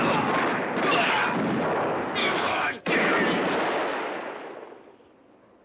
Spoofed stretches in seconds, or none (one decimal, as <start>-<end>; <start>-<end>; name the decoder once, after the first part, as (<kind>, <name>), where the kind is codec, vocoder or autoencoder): 2.2-2.8 (autoencoder, DAC-VAE)